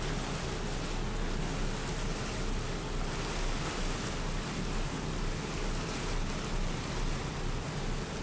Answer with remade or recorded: recorded